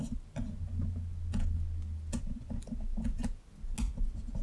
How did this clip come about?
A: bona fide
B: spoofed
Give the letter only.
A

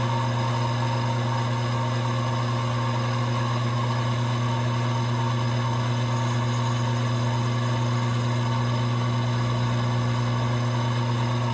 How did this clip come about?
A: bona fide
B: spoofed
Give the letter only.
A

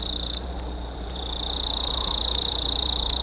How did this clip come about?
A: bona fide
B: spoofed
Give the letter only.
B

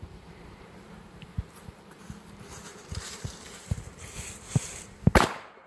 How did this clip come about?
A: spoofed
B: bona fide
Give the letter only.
A